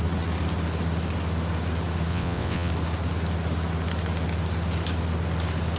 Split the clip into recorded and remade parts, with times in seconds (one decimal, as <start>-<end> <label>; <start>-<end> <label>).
0.0-2.1 recorded; 2.1-2.7 remade; 2.7-5.8 recorded